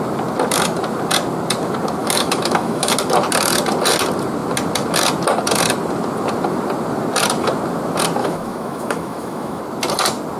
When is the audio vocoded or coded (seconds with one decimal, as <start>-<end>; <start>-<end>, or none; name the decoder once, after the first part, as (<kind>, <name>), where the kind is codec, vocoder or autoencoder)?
2.0-2.9 (autoencoder, DAC-VAE); 8.2-9.6